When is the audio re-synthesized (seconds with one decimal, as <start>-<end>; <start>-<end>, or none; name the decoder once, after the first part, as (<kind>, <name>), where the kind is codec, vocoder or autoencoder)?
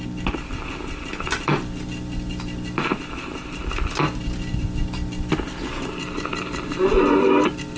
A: none